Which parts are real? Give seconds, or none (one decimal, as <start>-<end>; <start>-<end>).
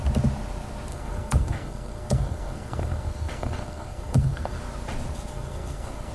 0.0-0.9; 4.6-5.3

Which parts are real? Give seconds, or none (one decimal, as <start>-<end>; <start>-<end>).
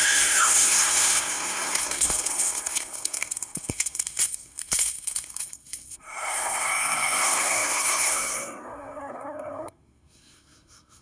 none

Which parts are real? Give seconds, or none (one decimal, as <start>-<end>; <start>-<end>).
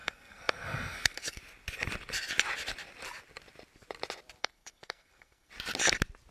1.4-4.4; 5.5-6.3